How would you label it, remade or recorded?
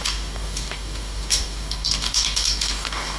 remade